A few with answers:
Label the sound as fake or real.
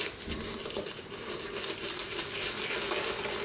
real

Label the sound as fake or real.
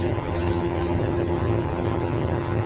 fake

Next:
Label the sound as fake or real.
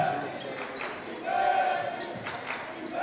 real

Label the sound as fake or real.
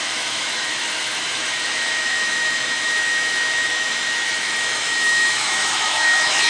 fake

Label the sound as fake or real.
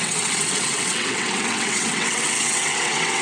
fake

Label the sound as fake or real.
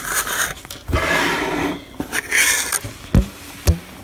real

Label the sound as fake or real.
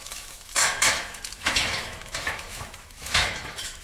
fake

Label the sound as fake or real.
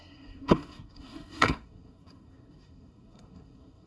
fake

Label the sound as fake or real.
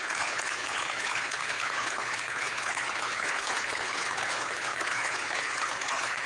fake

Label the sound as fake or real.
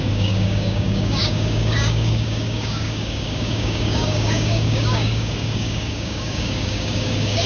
fake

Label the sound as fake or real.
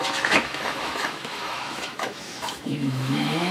fake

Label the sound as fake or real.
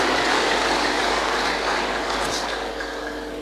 fake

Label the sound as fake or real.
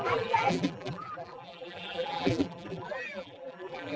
fake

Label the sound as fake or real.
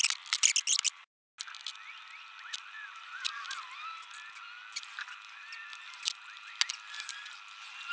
real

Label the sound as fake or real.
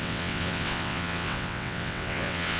fake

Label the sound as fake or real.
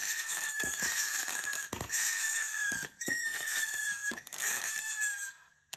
fake